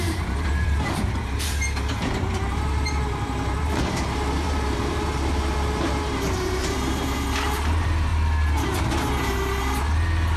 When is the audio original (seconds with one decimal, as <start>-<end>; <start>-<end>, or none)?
8.1-10.4

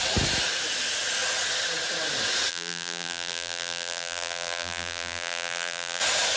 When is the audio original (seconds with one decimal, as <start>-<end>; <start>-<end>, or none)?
0.0-2.5; 6.0-6.4

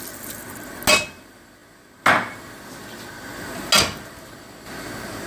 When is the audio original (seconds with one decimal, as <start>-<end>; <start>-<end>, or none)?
0.0-5.3